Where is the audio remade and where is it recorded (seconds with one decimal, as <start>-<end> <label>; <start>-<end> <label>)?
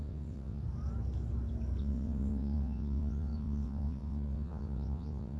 0.0-0.6 remade; 0.6-1.8 recorded; 1.8-5.4 remade